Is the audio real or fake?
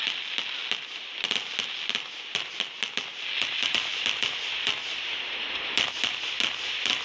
real